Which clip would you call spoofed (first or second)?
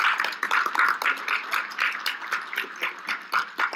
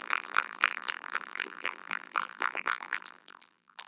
second